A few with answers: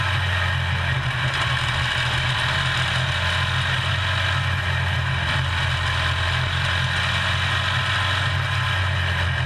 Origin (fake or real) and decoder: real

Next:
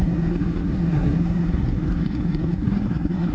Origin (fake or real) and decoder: fake, codec, SNAC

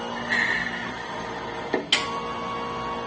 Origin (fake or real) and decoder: real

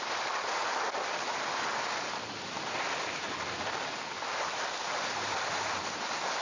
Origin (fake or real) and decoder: real